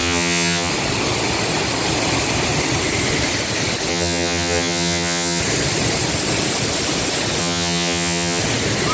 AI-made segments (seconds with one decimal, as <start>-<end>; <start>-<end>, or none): 0.0-0.7; 3.9-5.4; 7.4-8.4